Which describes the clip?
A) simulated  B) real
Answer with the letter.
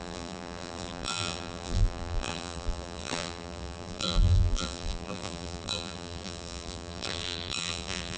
A